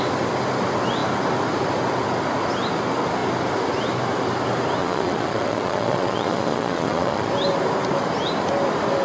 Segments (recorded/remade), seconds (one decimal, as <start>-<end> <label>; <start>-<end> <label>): 0.0-4.8 recorded; 4.8-7.3 remade; 7.3-9.0 recorded